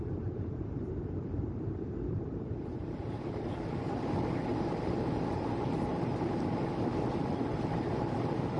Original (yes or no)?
no